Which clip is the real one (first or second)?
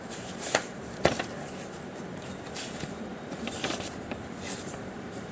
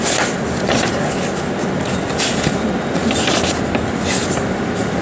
second